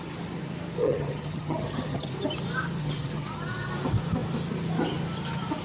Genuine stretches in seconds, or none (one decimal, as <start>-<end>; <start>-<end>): 0.0-0.8; 2.1-2.8; 3.7-5.6